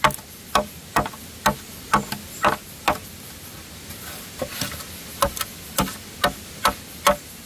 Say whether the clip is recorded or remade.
recorded